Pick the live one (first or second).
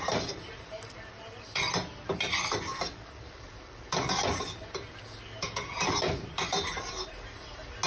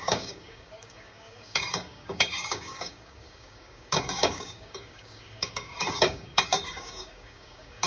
first